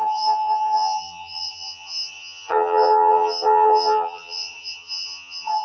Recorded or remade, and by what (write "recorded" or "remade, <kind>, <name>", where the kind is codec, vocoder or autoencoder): remade, vocoder, HiFi-GAN